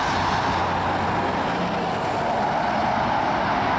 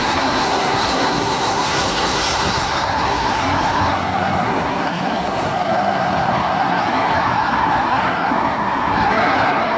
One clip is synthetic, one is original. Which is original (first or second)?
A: first